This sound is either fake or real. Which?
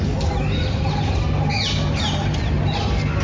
real